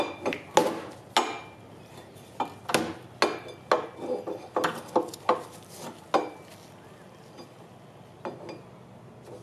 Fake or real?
real